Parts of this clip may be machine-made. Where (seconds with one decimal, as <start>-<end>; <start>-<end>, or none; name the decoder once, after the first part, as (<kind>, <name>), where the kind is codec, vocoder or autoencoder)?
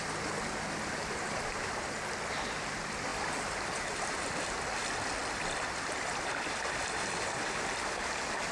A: 0.0-1.4 (vocoder, BigVGAN v2); 3.1-4.5